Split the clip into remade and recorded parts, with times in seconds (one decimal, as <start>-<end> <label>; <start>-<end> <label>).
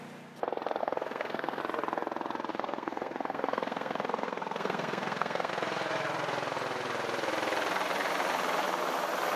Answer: 0.0-0.8 recorded; 0.8-1.6 remade; 1.6-2.5 recorded; 2.5-5.5 remade; 5.5-9.4 recorded